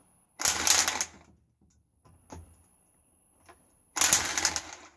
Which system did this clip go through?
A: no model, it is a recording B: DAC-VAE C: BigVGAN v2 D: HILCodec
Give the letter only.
A